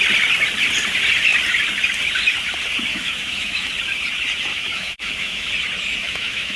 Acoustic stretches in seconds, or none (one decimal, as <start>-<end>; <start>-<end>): 0.0-2.9; 3.7-4.5; 5.5-6.0

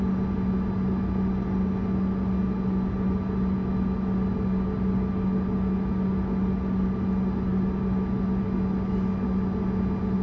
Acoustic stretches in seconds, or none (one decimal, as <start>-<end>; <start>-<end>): 0.0-10.2

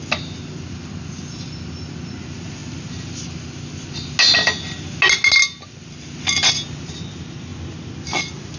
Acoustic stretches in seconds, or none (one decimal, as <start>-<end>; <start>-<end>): 0.0-8.6

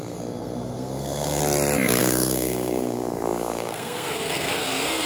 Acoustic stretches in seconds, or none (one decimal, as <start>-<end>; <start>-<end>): 1.4-2.0

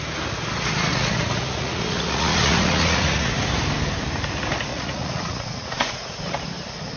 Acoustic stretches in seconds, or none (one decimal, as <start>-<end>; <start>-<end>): 0.0-0.9; 3.3-4.7; 6.4-7.0

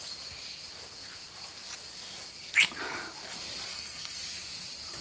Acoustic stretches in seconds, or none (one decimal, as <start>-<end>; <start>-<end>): 0.0-3.7; 4.2-5.0

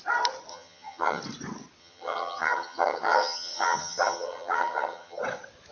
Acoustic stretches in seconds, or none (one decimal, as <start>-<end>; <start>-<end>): 0.0-0.5; 1.2-1.8; 5.2-5.7

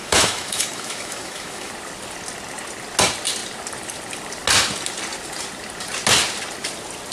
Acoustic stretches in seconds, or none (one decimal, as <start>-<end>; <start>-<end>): 1.7-7.1